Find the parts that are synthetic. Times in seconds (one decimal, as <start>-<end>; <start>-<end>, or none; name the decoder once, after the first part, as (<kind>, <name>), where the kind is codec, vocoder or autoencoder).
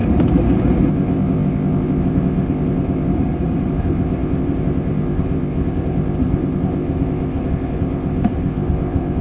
0.9-3.1 (codec, ZipCodec); 3.7-9.2